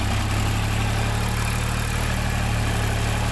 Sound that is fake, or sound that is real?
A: real